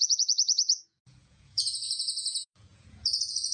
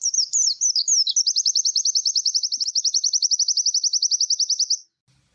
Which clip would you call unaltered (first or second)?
second